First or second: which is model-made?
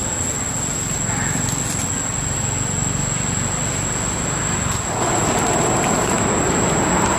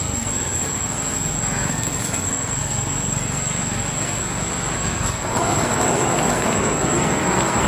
second